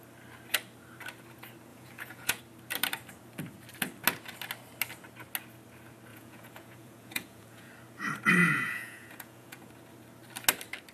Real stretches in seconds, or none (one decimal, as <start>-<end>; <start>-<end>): 0.0-1.7; 2.4-6.1; 7.7-8.4; 9.7-10.9

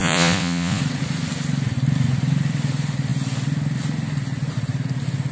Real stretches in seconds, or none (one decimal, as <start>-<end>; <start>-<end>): 0.8-5.3

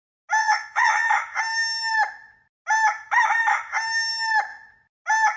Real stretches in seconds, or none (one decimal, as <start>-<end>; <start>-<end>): 0.0-0.4; 1.1-5.4

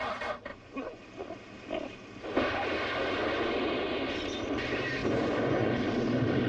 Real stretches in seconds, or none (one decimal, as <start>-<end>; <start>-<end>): 0.0-0.5; 1.0-5.0; 5.7-6.5